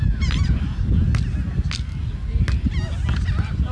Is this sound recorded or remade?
recorded